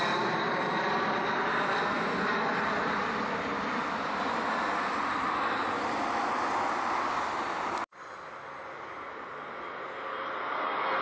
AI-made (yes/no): no